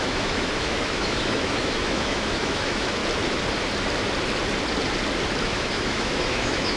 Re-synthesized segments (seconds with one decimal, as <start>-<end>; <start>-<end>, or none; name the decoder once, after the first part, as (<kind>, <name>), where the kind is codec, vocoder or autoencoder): 0.0-3.0 (autoencoder, DAC-VAE); 5.4-6.8